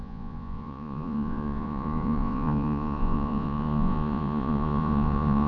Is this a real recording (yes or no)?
no